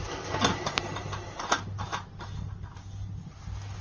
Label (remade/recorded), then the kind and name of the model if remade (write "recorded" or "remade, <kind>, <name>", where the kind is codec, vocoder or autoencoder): recorded